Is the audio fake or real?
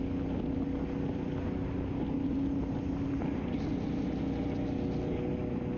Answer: real